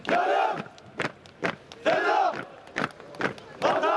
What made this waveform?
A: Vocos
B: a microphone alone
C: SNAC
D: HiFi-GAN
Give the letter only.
B